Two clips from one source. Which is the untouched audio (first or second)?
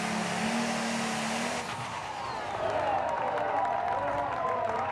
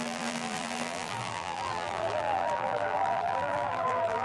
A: first